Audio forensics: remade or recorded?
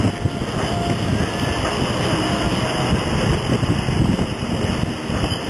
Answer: recorded